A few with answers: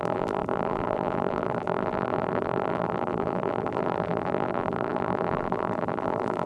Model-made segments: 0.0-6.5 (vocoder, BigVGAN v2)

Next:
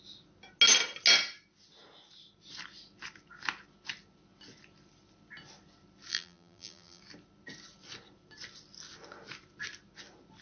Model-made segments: 6.1-7.0 (vocoder, BigVGAN v2)

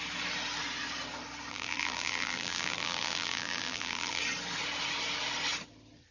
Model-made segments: 1.5-4.2 (vocoder, BigVGAN v2)

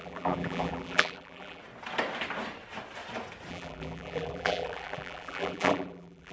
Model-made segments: 0.0-1.6 (vocoder, BigVGAN v2); 3.5-6.3

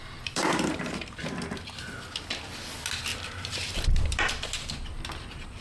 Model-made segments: 0.0-1.2 (vocoder, BigVGAN v2); 3.1-4.3